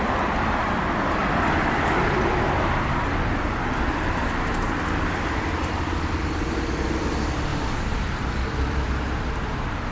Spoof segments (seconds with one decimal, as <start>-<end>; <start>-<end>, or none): none

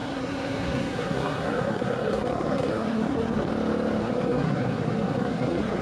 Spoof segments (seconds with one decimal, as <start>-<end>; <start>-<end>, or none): 0.0-3.5; 4.0-5.8

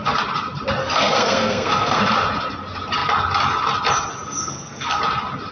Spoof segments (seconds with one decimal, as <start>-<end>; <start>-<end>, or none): 0.8-2.0; 4.4-5.0

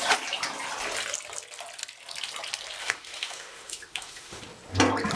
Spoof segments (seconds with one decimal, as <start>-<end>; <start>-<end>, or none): 2.8-4.4

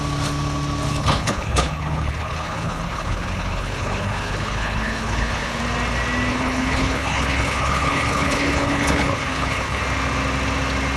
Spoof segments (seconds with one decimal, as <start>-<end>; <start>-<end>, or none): 1.0-5.6; 6.3-9.8

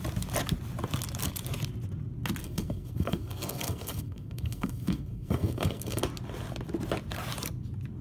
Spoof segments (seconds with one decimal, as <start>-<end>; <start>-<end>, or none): 2.4-6.0

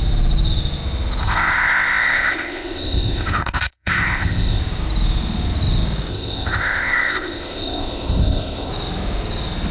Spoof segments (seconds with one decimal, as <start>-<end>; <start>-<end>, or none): 1.2-4.6; 6.1-8.7

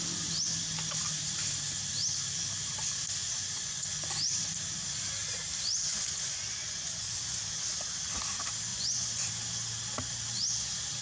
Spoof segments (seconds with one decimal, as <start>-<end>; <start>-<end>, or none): 3.2-3.9; 5.9-7.4; 8.7-9.3